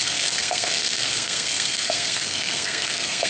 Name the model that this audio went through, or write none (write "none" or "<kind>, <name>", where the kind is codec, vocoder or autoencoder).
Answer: codec, SNAC